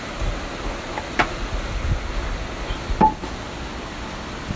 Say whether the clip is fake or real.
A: real